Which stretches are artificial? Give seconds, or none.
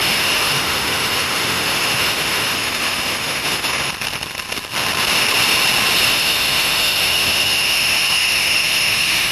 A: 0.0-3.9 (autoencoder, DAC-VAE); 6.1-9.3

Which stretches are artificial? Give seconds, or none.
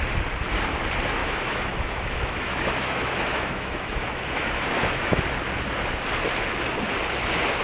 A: 1.2-5.2 (autoencoder, DAC-VAE)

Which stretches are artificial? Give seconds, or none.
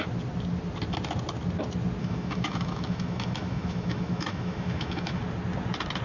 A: 2.0-5.2 (autoencoder, DAC-VAE)